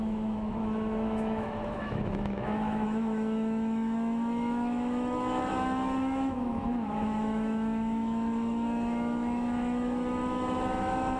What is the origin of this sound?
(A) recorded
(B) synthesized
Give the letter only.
B